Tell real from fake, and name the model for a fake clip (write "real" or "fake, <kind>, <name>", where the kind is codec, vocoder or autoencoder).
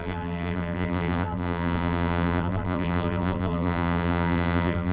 fake, vocoder, BigVGAN v2